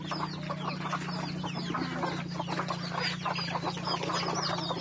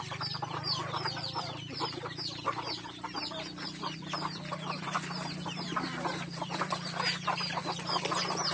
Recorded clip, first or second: first